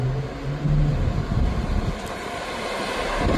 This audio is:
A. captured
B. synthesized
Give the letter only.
A